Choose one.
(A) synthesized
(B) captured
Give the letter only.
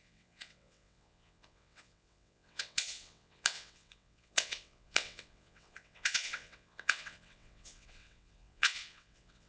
A